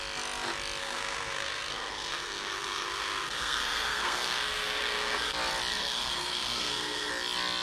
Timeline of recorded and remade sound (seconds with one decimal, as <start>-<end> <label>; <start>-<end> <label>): 0.0-0.8 recorded; 0.8-5.3 remade; 5.3-5.7 recorded; 5.7-7.1 remade; 7.1-7.6 recorded